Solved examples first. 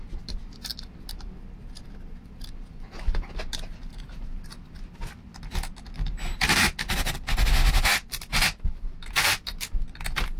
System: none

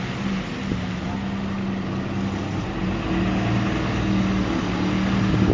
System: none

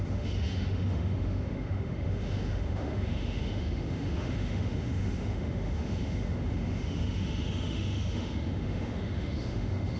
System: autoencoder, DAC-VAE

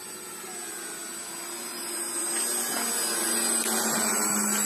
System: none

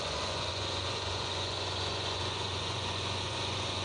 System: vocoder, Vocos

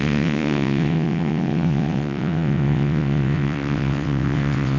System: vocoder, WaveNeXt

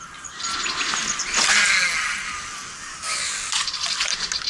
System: none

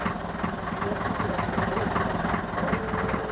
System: none